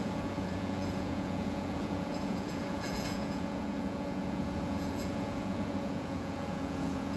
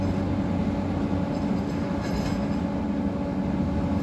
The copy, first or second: first